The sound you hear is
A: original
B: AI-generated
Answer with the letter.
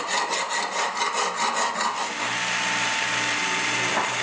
A